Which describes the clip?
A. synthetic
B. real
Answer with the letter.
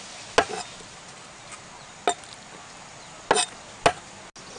B